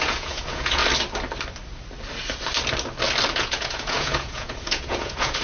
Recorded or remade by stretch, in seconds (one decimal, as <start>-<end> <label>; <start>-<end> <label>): 0.0-0.8 remade; 0.8-3.3 recorded; 3.3-5.4 remade